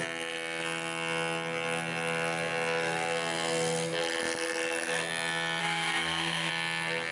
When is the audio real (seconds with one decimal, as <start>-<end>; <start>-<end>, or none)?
0.0-5.6; 6.5-7.1